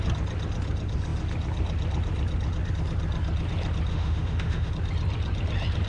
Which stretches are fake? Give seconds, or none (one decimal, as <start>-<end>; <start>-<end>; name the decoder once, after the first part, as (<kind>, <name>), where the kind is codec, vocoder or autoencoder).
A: 3.9-4.7 (autoencoder, DAC-VAE)